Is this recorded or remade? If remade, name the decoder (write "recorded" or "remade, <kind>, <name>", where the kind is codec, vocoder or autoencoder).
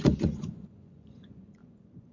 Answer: remade, vocoder, Vocos